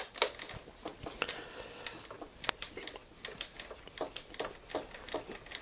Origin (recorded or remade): recorded